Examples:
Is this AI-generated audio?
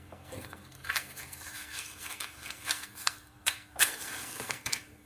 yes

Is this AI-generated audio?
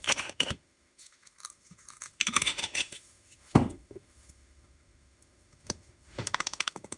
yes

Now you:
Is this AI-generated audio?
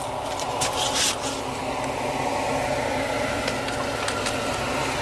no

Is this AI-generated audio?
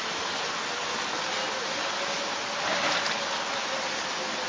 no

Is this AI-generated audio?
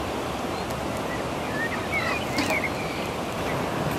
no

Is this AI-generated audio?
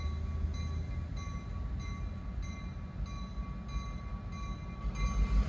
no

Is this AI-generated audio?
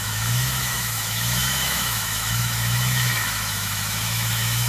yes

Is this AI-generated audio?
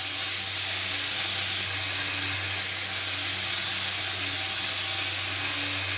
no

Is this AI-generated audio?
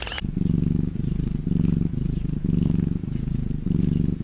no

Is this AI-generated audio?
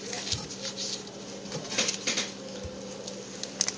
no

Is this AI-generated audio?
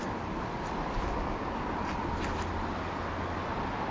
no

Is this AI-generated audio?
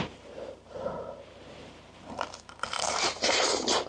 yes